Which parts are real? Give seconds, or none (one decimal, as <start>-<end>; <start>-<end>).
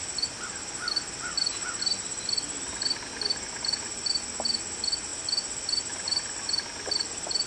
0.0-7.5